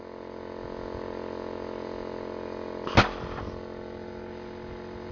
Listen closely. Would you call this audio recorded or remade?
recorded